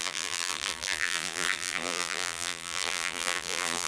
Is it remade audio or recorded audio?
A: remade